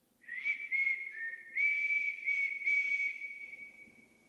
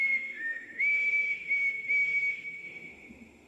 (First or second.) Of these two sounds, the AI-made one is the second